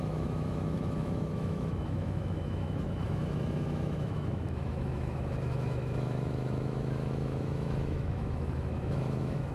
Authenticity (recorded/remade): remade